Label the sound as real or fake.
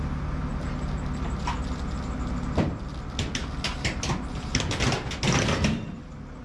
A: real